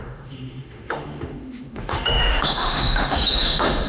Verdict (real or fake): fake